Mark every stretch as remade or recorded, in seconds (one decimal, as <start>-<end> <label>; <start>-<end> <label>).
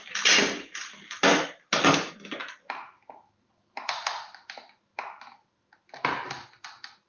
0.0-7.1 recorded